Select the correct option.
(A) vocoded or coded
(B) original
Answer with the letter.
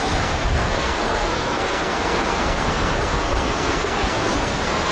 A